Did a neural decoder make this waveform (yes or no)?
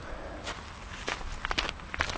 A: no